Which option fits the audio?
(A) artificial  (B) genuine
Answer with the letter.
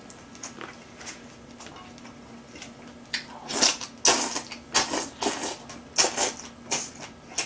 B